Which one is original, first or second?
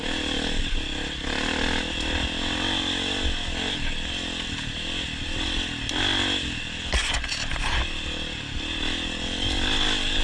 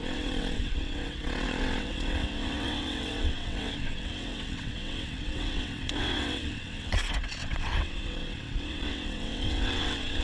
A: first